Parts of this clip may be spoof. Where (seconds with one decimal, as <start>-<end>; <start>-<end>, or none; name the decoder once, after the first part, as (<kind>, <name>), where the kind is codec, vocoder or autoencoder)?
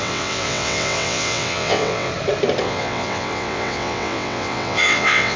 0.0-2.1 (vocoder, WaveNeXt); 2.6-5.4